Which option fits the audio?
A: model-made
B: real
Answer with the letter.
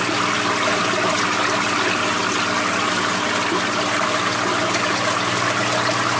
B